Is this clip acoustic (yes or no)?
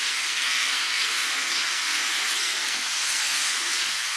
no